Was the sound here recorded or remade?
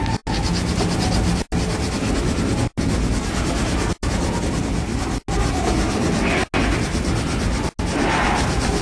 recorded